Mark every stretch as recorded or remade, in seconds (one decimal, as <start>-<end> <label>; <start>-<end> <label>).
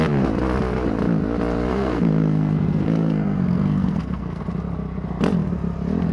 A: 0.0-1.7 recorded; 1.7-4.4 remade; 4.4-6.1 recorded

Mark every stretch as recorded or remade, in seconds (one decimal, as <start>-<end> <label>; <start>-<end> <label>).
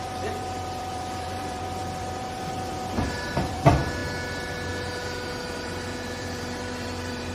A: 0.0-4.0 remade; 4.0-5.4 recorded; 5.4-7.3 remade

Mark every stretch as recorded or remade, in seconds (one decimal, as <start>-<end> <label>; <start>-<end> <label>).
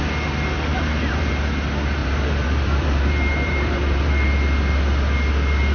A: 0.0-0.7 recorded; 0.7-1.3 remade; 1.3-2.0 recorded; 2.0-4.1 remade; 4.1-5.7 recorded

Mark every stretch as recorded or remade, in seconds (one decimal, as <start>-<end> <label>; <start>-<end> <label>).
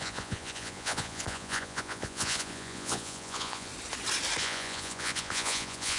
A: 0.0-3.7 remade; 3.7-4.4 recorded; 4.4-6.0 remade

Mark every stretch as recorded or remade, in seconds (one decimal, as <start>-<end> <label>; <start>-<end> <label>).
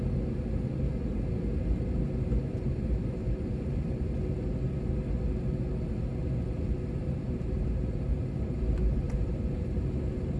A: 0.0-2.5 recorded; 2.5-3.5 remade; 3.5-7.0 recorded; 7.0-9.4 remade; 9.4-10.4 recorded